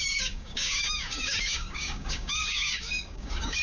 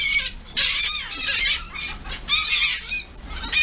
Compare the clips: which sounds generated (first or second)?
first